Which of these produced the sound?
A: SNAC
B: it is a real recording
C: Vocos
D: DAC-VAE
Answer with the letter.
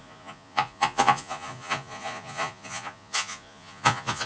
C